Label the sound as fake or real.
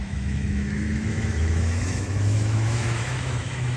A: fake